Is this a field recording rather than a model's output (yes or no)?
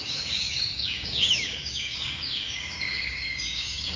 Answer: no